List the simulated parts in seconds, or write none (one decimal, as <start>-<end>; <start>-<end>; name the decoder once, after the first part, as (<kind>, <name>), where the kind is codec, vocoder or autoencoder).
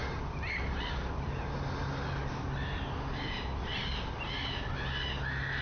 none